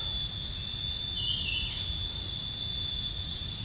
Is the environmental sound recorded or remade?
recorded